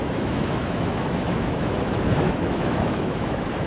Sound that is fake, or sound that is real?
fake